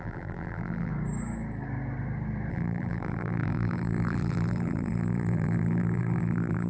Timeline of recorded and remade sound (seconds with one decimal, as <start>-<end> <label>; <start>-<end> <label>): 0.0-0.9 remade; 0.9-2.5 recorded; 2.5-6.7 remade